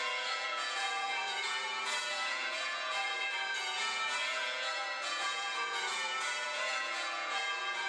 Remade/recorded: remade